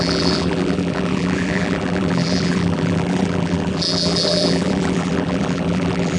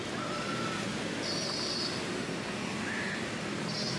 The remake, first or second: first